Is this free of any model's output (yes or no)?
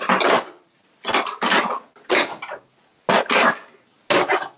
yes